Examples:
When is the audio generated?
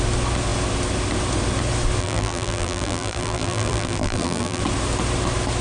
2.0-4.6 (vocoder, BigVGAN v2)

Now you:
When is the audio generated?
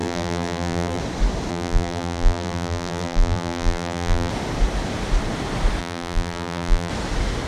0.0-1.0 (vocoder, BigVGAN v2); 1.5-4.3; 5.8-6.9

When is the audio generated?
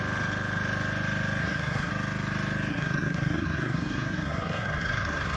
1.4-1.9 (codec, SNAC); 2.7-5.4